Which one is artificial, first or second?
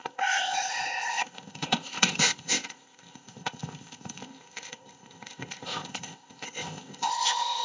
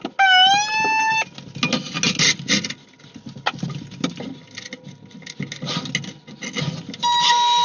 first